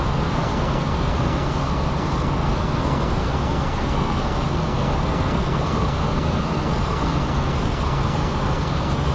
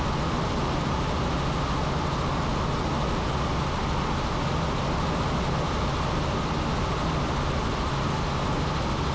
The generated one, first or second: first